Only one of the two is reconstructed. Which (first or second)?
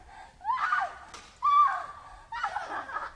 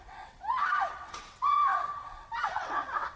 second